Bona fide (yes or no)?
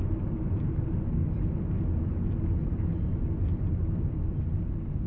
yes